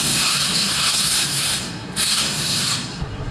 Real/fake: fake